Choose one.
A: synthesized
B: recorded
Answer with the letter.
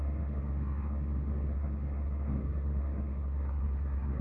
A